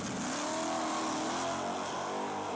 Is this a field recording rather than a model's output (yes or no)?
yes